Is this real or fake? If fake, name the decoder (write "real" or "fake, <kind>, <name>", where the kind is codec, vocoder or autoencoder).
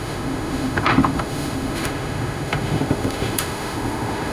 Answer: fake, autoencoder, DAC-VAE